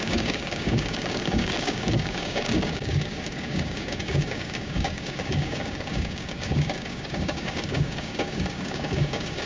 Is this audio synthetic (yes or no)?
yes